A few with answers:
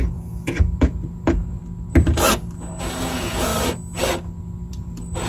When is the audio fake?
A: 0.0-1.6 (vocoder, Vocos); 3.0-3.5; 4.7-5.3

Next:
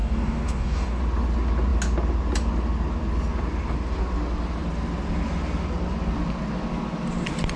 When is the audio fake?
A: 0.0-1.0 (codec, DAC)

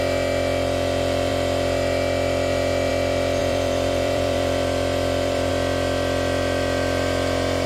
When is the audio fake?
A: 3.4-5.5 (vocoder, BigVGAN v2)

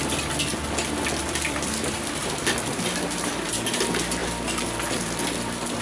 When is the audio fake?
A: 0.0-0.5 (vocoder, BigVGAN v2); 1.2-4.2; 4.8-5.8

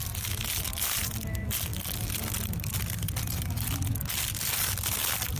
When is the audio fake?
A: 0.0-1.7 (vocoder, BigVGAN v2); 4.2-5.4

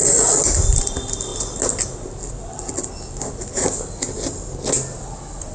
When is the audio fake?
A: none